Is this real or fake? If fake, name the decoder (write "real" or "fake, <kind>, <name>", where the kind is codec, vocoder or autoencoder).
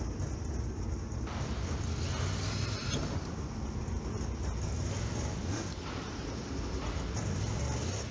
real